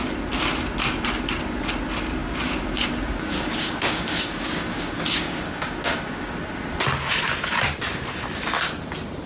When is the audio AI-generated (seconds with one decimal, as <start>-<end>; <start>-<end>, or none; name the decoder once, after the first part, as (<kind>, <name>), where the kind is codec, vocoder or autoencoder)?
2.2-6.3 (codec, DAC)